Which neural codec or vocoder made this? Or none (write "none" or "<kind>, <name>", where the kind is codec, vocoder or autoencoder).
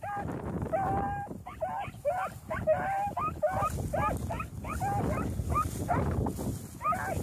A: none